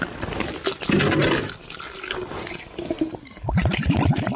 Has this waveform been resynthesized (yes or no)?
no